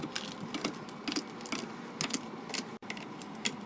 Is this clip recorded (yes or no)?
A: yes